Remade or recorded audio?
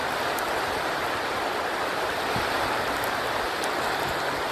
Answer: recorded